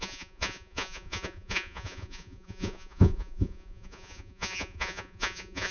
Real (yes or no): no